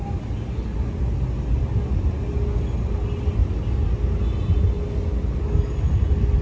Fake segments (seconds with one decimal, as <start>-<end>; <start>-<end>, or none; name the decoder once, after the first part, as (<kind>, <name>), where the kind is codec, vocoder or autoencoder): none